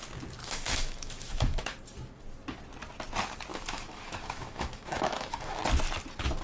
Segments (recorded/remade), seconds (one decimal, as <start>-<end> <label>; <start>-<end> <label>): 0.0-0.4 recorded; 0.4-1.8 remade; 1.8-3.5 recorded; 3.5-5.6 remade; 5.6-6.4 recorded